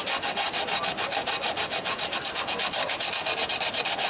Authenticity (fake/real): real